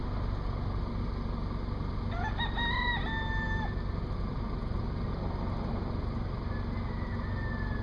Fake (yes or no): no